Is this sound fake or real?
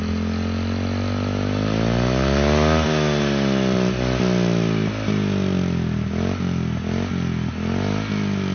real